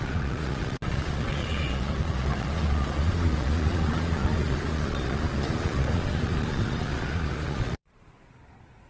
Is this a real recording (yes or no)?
no